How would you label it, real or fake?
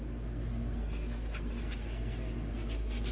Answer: fake